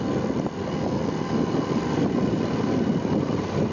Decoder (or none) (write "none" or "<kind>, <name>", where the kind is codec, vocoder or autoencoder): none